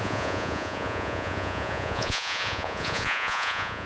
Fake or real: fake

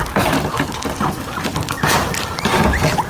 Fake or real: real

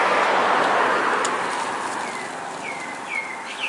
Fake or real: real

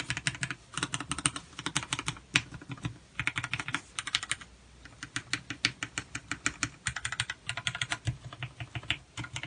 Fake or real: real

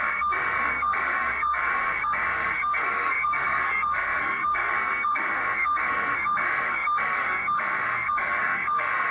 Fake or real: fake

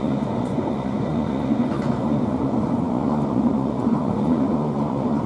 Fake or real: fake